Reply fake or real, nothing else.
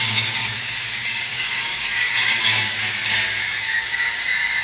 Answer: fake